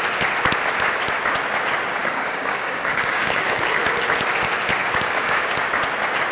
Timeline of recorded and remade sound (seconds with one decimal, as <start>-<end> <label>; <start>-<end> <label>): 0.0-2.0 recorded; 2.0-3.8 remade; 3.8-4.8 recorded; 4.8-5.7 remade; 5.7-6.3 recorded